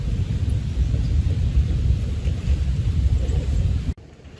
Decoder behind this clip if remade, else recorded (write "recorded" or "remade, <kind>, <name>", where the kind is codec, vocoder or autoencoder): remade, vocoder, BigVGAN v2